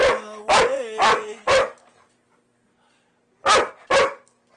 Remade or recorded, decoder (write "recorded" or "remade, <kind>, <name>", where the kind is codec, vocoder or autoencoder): recorded